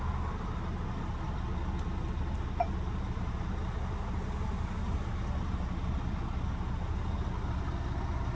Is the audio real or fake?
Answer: real